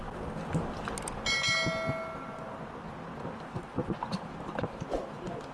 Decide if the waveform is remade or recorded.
recorded